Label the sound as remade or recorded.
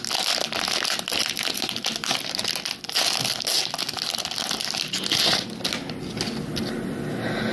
recorded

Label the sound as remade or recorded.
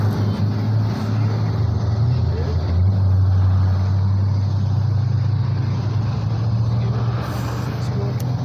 recorded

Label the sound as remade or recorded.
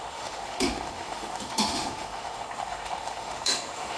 remade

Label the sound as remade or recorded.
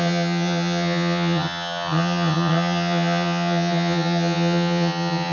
remade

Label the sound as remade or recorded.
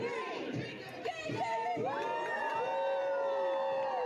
recorded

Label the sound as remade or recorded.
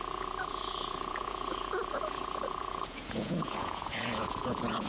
remade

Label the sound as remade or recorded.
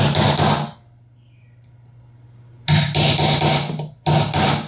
recorded